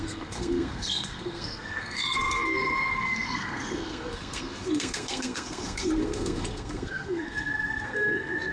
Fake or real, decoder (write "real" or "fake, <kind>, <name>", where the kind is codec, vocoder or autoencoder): fake, codec, SNAC